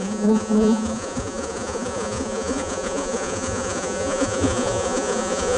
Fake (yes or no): yes